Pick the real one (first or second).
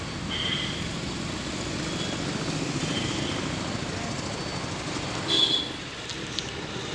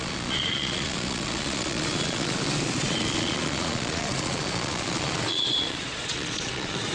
first